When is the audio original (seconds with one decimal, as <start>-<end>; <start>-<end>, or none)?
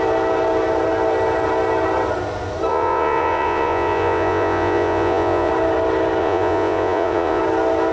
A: 0.0-2.7; 5.5-6.2; 7.4-7.9